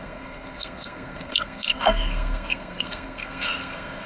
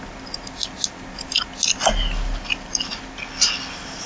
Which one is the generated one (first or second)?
first